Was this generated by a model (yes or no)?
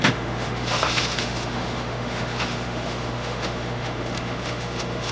yes